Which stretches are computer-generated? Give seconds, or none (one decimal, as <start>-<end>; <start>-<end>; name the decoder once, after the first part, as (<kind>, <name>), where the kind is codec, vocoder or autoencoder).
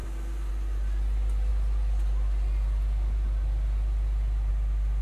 none